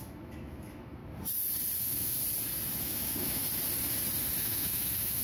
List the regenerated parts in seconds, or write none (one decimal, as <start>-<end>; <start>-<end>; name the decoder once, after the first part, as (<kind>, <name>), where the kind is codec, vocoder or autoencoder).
0.0-1.0 (autoencoder, DAC-VAE); 1.8-2.2; 2.8-3.4; 4.4-5.2